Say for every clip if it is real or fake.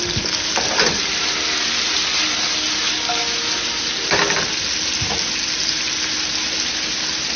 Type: real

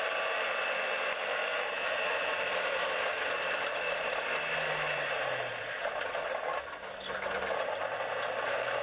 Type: real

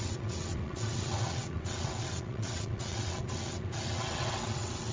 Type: fake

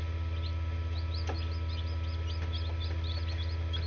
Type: real